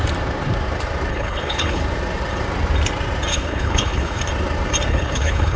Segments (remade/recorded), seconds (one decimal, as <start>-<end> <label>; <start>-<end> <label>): 0.0-1.1 recorded; 1.1-1.8 remade; 1.8-3.3 recorded; 3.3-4.2 remade; 4.2-4.9 recorded; 4.9-5.6 remade